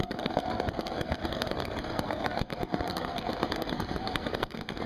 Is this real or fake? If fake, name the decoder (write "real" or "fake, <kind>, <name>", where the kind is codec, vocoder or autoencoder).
fake, codec, SNAC